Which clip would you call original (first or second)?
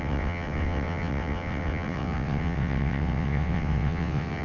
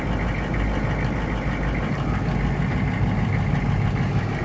second